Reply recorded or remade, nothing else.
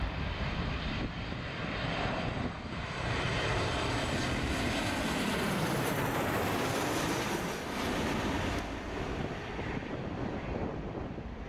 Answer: remade